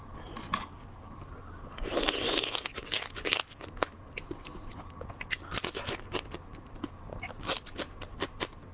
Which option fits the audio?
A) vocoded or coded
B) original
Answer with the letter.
B